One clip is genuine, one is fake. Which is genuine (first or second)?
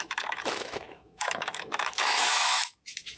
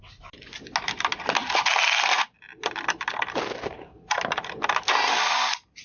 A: second